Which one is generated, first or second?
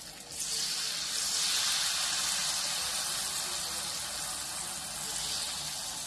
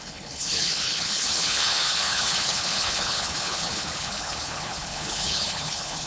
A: second